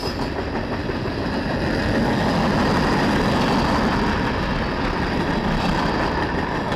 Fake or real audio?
real